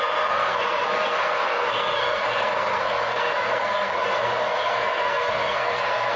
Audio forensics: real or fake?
fake